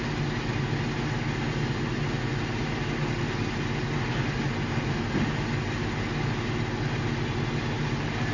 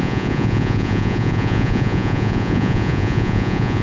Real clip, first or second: first